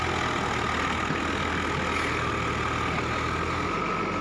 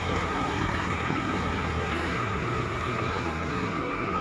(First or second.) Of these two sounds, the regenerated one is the second